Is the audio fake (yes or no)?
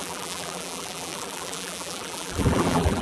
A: yes